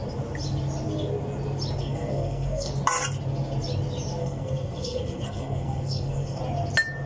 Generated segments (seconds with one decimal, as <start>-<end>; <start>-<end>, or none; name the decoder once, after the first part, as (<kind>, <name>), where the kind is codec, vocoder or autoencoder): 1.8-2.7 (codec, SNAC); 4.2-6.4